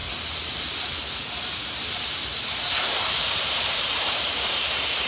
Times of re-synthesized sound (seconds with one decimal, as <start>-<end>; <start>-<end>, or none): 3.1-5.1